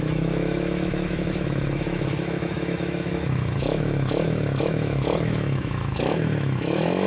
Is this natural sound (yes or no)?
no